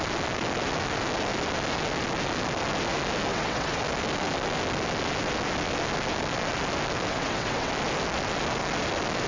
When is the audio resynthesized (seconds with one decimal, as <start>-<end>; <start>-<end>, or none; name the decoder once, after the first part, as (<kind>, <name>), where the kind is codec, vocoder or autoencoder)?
3.3-3.8 (vocoder, WaveNeXt); 7.1-7.7